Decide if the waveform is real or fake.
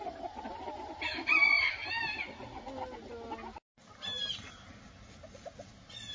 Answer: real